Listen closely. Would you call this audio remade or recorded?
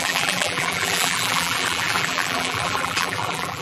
remade